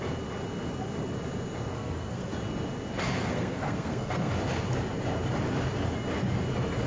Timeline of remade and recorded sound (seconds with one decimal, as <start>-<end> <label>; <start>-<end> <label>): 0.0-1.7 recorded; 1.7-2.3 remade; 2.3-3.2 recorded; 3.2-4.3 remade; 4.3-6.9 recorded